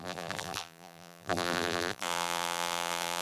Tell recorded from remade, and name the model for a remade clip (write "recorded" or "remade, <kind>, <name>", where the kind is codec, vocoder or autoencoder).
remade, vocoder, BigVGAN v2